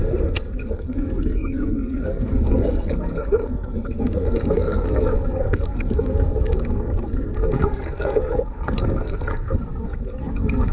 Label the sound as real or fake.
fake